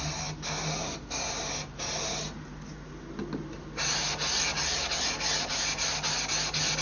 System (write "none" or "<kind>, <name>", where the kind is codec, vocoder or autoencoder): none